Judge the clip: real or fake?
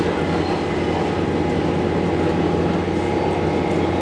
real